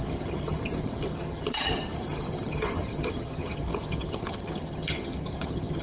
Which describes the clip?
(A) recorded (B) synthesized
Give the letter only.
B